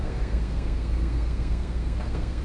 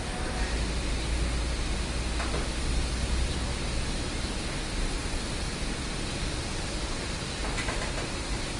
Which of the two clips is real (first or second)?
second